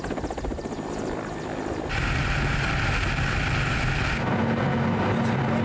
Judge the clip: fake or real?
real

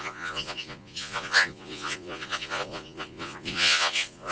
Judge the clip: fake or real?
fake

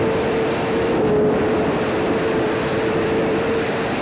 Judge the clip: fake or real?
fake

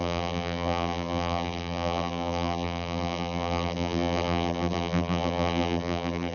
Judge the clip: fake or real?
fake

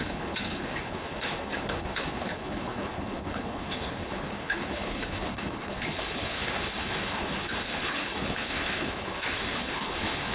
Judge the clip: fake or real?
fake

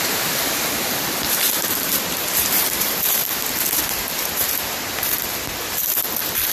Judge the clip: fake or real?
real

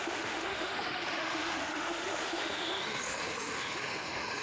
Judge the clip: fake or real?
fake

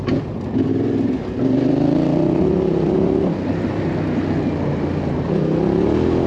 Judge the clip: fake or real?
real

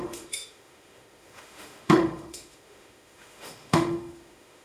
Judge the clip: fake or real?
fake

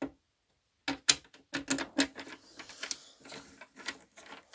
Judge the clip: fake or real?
real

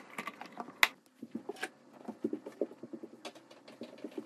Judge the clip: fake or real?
real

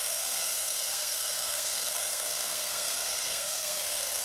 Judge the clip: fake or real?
fake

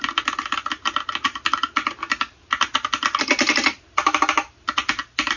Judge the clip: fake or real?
real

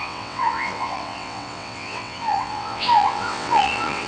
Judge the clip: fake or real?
fake